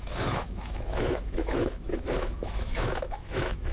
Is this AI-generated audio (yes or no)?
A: yes